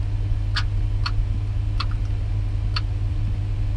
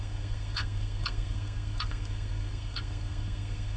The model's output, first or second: second